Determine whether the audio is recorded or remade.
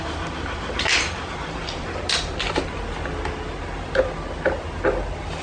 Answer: recorded